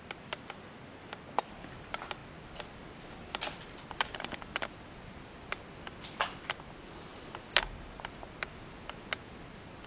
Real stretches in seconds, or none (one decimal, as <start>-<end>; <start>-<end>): 0.0-9.9